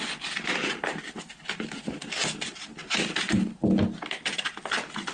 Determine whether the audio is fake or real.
real